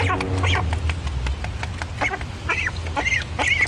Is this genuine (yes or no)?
yes